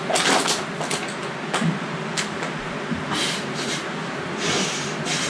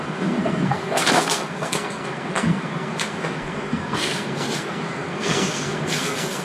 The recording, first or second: first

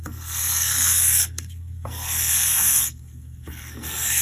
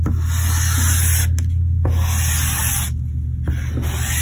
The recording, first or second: second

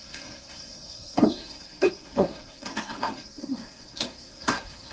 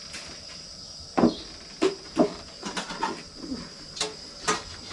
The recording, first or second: second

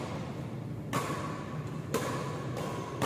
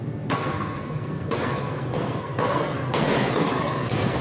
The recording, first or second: first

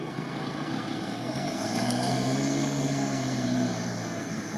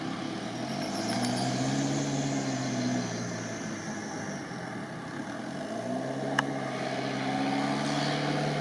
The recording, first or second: second